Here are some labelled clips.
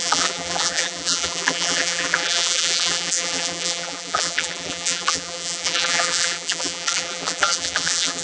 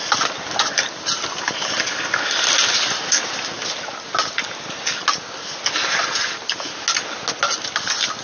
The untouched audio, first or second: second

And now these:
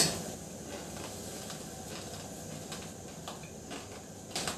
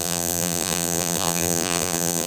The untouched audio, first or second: first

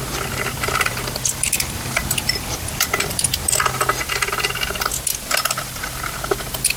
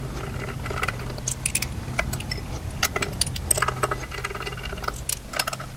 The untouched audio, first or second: second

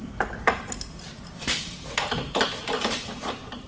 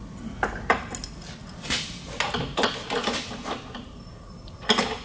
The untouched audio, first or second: second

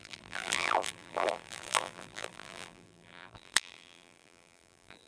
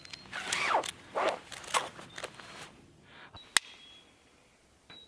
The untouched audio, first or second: second